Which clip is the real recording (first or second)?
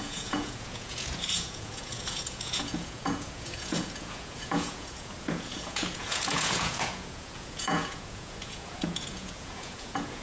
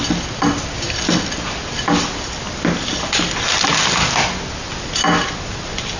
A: second